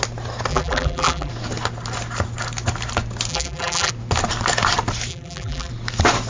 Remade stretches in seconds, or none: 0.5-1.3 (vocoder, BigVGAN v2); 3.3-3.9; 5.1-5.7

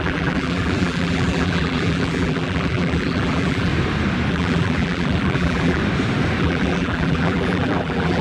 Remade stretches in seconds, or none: 0.0-3.7 (vocoder, BigVGAN v2); 4.3-5.8; 6.4-8.2

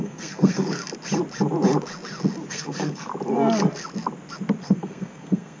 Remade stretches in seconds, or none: 0.0-0.8 (codec, SNAC); 2.5-3.1; 4.6-5.6

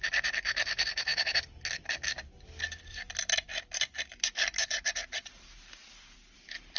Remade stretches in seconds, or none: 0.0-1.1 (vocoder, BigVGAN v2); 2.8-6.8